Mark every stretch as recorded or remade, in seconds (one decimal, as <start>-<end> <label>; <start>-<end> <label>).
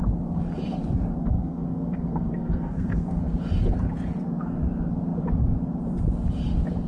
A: 0.0-1.2 recorded; 1.2-3.2 remade; 3.2-6.9 recorded